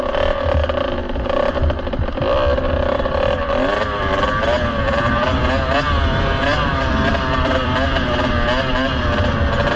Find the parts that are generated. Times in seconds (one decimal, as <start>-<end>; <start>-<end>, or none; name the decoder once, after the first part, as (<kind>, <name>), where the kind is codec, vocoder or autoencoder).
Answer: 1.0-5.6 (vocoder, BigVGAN v2); 6.7-8.3